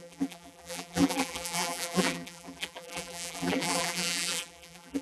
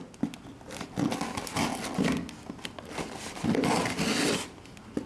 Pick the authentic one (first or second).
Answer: second